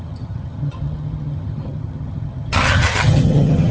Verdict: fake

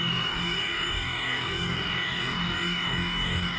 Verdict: fake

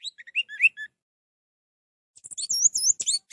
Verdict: real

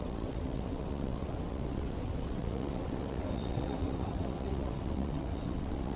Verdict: fake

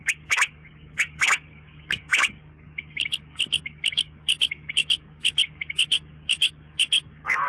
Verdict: fake